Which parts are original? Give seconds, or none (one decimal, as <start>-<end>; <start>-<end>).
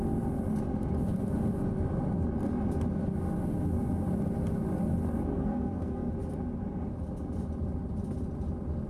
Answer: 0.0-5.3; 6.1-8.9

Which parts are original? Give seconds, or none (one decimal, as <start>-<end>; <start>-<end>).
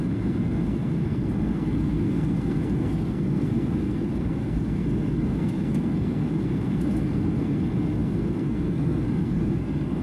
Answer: none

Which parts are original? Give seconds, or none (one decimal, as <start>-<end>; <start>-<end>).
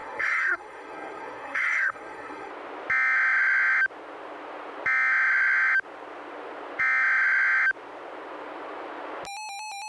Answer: 2.5-9.9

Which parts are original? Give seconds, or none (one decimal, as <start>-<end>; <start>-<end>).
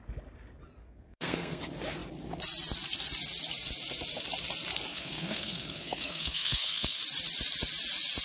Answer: 0.0-0.8; 1.6-4.9; 7.0-8.2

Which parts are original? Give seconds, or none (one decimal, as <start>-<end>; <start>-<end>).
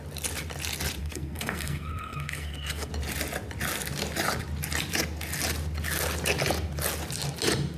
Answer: 0.0-1.0; 2.9-7.8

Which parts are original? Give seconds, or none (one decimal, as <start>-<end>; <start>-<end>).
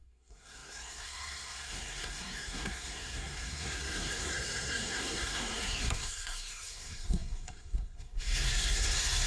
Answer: none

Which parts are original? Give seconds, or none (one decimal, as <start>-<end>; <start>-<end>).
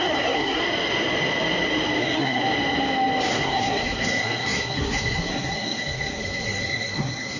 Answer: 0.6-2.0; 2.4-3.3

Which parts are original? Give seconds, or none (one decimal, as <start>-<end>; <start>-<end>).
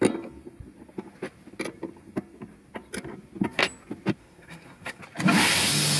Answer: 0.0-4.2; 5.0-6.0